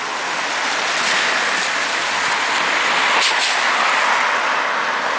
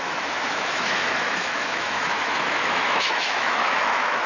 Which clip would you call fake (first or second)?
second